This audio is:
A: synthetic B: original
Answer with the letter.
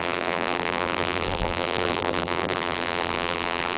A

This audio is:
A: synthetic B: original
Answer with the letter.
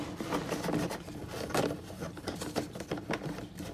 B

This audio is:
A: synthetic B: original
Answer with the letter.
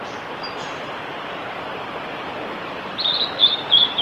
A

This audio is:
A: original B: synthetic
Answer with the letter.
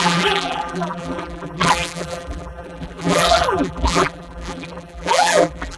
B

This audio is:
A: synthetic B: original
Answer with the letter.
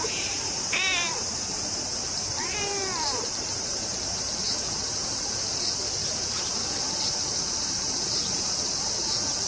A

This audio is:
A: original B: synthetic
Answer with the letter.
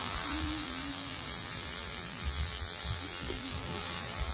B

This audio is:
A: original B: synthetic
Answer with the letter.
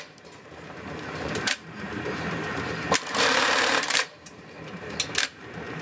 B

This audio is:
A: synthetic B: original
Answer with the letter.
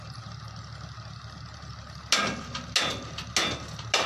B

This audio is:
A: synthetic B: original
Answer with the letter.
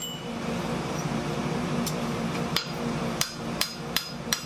A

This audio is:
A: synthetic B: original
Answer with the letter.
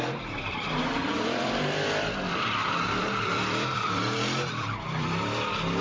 A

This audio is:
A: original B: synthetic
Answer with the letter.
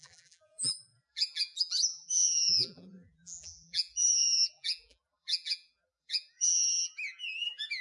B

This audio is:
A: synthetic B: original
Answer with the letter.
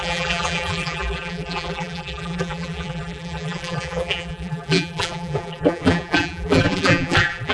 A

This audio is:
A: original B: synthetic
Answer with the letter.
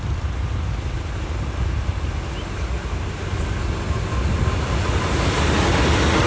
A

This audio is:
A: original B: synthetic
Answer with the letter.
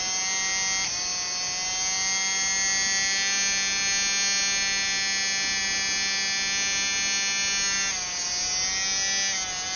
A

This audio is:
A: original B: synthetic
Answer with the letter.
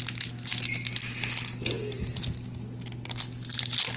A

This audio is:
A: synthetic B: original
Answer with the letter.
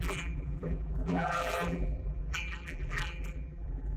A